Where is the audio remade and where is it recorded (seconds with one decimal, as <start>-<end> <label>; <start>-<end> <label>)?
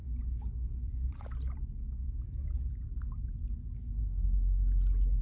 0.0-4.1 recorded; 4.1-4.6 remade; 4.6-5.2 recorded